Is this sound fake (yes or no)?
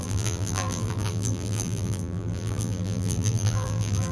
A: yes